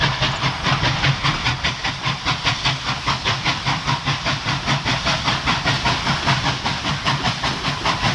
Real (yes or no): yes